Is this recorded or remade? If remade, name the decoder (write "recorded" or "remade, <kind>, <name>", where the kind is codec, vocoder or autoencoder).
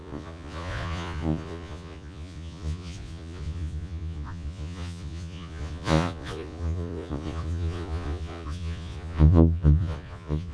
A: remade, vocoder, Vocos